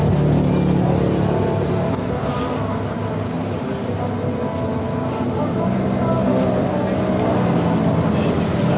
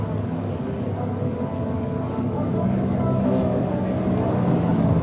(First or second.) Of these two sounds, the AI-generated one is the second